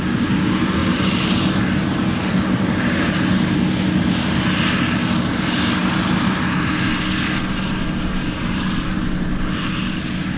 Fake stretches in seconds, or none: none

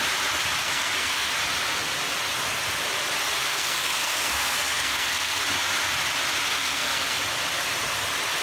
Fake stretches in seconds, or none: 0.6-1.3 (codec, SNAC); 3.4-5.4; 6.5-7.2